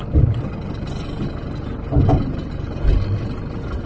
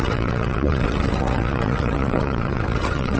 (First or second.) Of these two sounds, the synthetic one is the second